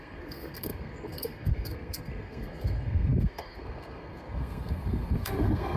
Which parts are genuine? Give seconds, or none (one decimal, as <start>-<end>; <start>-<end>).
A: none